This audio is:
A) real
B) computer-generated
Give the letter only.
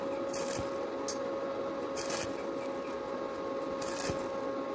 A